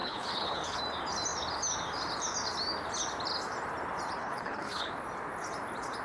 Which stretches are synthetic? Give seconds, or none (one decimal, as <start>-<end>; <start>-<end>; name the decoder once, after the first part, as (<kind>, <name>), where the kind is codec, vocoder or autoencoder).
0.0-0.8 (codec, HILCodec); 4.2-4.9